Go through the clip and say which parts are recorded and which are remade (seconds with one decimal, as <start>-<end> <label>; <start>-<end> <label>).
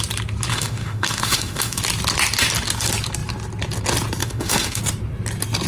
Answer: 0.0-0.5 recorded; 0.5-1.8 remade; 1.8-4.2 recorded; 4.2-4.8 remade; 4.8-5.7 recorded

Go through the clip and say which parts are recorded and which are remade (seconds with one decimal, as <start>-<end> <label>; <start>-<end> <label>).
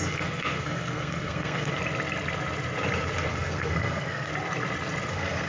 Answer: 0.0-1.7 remade; 1.7-3.3 recorded; 3.3-4.3 remade; 4.3-5.1 recorded; 5.1-5.5 remade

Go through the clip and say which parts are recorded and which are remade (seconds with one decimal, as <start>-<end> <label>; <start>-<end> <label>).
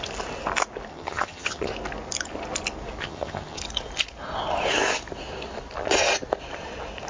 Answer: 0.0-0.9 recorded; 0.9-1.7 remade; 1.7-3.0 recorded; 3.0-3.6 remade; 3.6-7.1 recorded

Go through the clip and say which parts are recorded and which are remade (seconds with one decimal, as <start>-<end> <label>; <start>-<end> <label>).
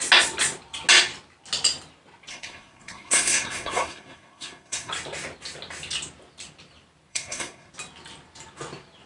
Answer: 0.0-2.3 recorded; 2.3-4.9 remade; 4.9-7.1 recorded; 7.1-7.7 remade; 7.7-9.1 recorded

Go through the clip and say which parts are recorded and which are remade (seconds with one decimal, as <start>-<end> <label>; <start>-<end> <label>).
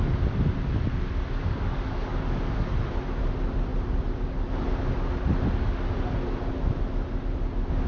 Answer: 0.0-1.4 recorded; 1.4-2.7 remade; 2.7-7.9 recorded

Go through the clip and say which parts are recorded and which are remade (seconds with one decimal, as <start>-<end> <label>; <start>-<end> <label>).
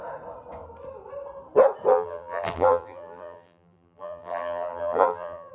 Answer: 0.0-1.9 recorded; 1.9-5.5 remade